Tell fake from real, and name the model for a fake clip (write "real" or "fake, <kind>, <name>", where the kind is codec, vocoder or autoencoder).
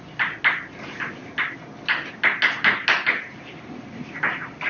real